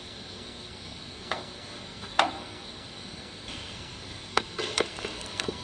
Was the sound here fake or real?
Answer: fake